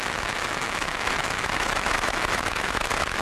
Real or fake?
fake